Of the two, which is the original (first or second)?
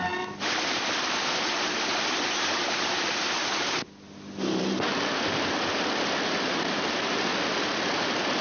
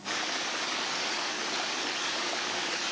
first